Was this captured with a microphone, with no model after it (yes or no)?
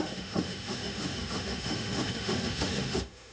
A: no